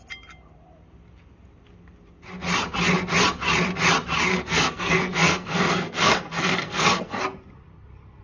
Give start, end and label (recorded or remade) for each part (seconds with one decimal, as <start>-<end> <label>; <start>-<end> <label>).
0.0-4.3 recorded; 4.3-7.2 remade; 7.2-8.2 recorded